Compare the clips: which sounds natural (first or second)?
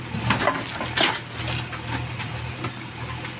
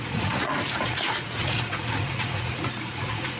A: first